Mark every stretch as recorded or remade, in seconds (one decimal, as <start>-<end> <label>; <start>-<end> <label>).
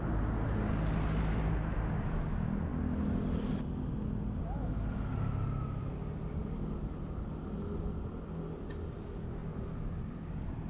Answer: 0.0-10.7 recorded